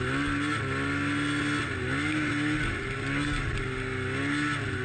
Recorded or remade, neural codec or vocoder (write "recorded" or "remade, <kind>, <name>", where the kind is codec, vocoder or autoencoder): recorded